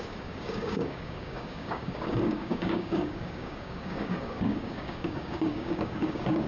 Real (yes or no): no